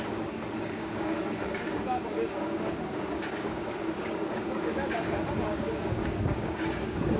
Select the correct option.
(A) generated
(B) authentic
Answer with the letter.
A